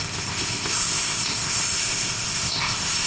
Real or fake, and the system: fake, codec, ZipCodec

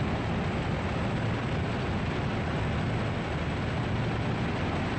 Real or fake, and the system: real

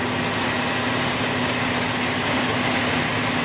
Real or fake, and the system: real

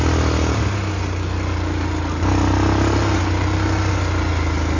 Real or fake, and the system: real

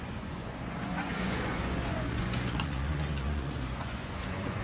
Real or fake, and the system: fake, vocoder, Vocos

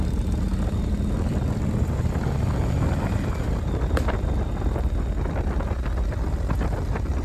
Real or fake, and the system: real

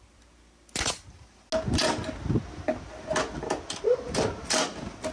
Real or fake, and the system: real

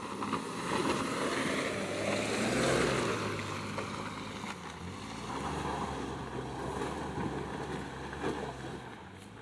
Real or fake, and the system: real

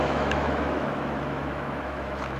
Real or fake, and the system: fake, autoencoder, DAC-VAE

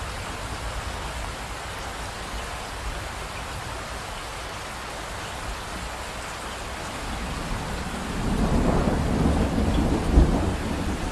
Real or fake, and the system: real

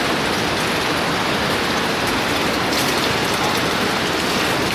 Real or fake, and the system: real